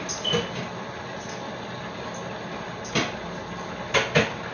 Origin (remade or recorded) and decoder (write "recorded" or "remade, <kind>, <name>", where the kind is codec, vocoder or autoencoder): recorded